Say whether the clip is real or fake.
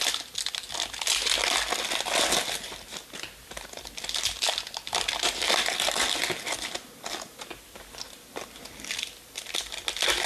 real